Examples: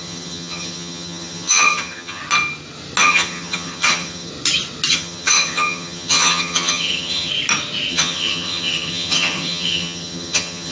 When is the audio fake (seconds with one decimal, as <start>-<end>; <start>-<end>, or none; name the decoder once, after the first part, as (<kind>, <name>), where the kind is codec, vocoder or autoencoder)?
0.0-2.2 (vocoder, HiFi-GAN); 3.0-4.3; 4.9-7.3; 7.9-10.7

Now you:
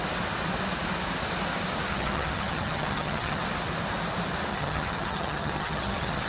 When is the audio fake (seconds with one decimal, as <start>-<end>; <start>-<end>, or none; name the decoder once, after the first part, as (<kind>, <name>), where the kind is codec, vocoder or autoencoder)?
1.9-3.4 (vocoder, HiFi-GAN); 4.5-6.3

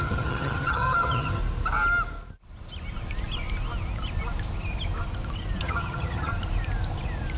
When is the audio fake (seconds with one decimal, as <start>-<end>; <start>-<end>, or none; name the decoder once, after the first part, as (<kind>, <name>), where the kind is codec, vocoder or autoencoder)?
0.0-1.4 (vocoder, HiFi-GAN); 5.6-6.3